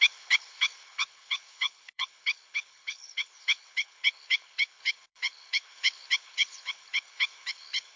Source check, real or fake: fake